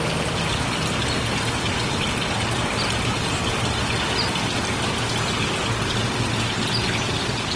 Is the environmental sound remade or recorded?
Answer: recorded